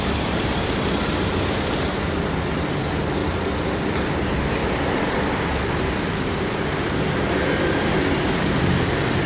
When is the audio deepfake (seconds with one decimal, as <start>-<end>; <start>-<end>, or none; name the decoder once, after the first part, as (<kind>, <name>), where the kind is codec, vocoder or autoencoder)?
0.0-3.2 (vocoder, BigVGAN v2); 3.9-4.6; 5.5-9.3